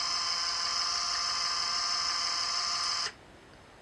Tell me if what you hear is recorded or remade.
recorded